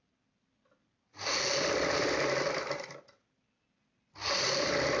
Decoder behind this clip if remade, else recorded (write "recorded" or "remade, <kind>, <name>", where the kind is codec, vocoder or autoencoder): recorded